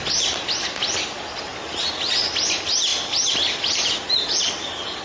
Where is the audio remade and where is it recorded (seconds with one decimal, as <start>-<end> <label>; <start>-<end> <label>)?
0.0-5.0 recorded